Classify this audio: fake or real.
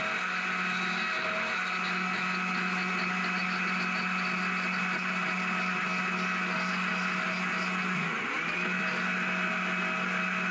real